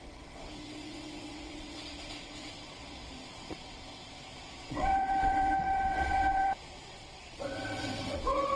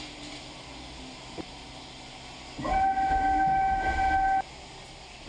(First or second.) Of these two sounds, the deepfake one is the first